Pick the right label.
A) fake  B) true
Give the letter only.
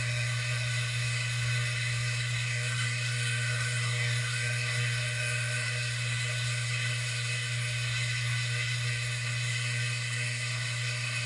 A